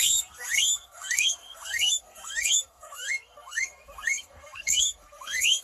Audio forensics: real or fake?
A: fake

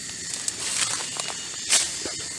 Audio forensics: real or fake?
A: real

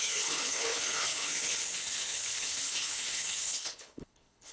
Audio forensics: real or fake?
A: fake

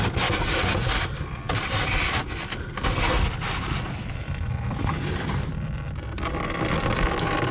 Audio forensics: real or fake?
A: real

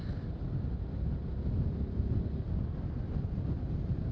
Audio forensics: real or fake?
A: real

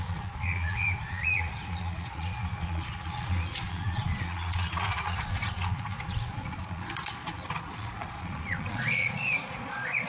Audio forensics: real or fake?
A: fake